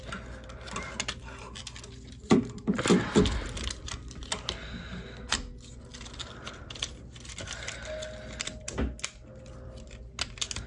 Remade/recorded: recorded